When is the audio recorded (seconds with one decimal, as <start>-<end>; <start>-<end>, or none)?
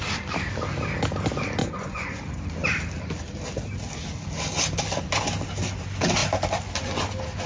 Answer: 0.0-1.6; 2.2-7.5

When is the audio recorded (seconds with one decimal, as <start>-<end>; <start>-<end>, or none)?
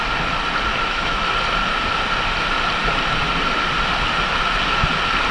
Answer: 0.0-0.7; 1.3-5.3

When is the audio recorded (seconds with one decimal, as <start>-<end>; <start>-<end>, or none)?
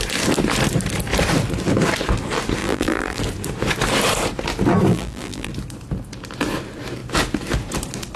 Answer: 0.0-2.6; 3.2-4.9; 5.5-8.2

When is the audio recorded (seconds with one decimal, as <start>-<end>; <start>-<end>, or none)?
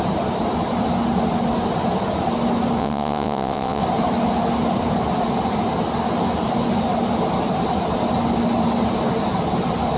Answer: 0.0-2.8; 3.8-10.0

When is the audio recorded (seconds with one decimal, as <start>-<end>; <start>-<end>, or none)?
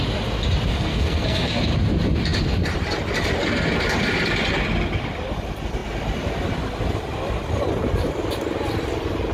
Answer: 0.0-0.7; 1.6-9.3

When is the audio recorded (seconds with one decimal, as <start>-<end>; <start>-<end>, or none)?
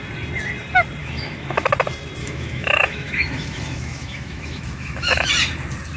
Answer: 0.0-1.0; 1.7-2.2; 5.3-6.0